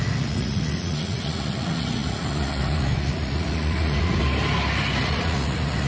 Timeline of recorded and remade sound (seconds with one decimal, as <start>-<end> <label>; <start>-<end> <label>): 0.0-4.2 remade; 4.2-5.0 recorded; 5.0-5.9 remade